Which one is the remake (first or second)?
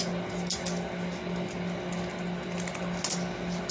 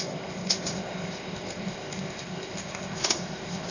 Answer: second